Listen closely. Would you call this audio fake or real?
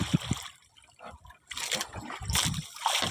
real